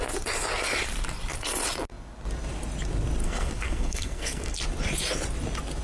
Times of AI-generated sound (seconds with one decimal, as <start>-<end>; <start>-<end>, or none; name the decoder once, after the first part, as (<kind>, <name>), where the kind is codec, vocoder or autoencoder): 3.2-4.5 (codec, SNAC)